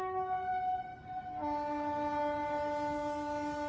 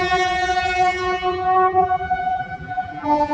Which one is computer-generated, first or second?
second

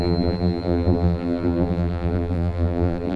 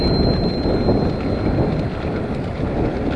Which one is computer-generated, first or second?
first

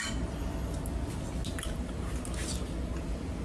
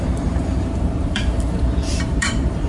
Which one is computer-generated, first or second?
second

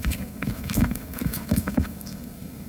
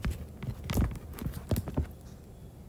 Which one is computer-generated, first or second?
first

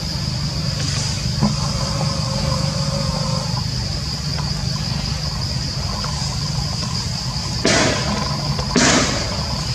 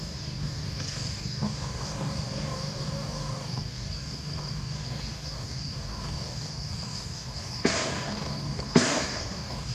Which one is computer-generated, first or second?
second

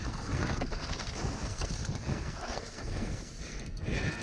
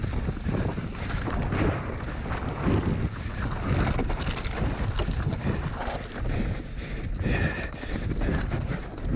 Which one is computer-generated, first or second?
first